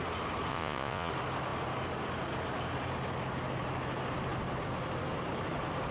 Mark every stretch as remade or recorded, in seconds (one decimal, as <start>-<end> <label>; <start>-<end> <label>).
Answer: 0.0-0.5 recorded; 0.5-1.1 remade; 1.1-5.9 recorded